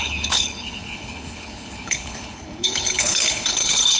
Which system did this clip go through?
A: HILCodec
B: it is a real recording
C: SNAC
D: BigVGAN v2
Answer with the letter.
A